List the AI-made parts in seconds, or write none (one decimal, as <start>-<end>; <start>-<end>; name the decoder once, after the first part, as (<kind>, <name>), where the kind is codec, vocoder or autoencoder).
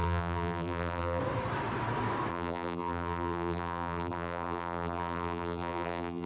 0.0-1.2 (vocoder, BigVGAN v2); 2.3-6.3